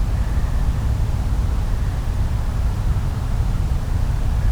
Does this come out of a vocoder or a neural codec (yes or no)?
yes